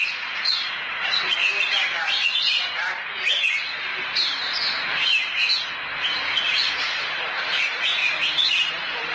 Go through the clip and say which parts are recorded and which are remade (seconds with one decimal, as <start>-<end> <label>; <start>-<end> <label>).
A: 0.0-1.4 remade; 1.4-2.0 recorded; 2.0-3.9 remade; 3.9-6.7 recorded; 6.7-8.0 remade; 8.0-8.7 recorded; 8.7-9.1 remade